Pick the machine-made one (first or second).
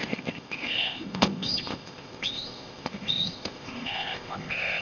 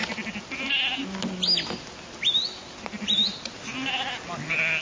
first